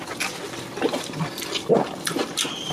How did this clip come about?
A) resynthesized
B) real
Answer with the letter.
A